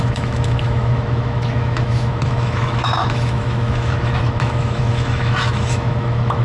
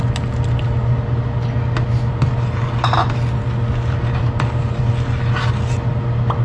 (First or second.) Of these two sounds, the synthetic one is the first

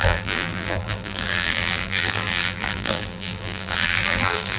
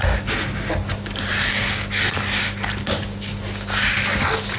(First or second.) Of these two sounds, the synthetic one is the first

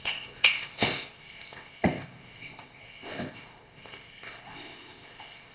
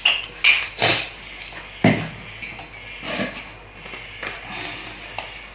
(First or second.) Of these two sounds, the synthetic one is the first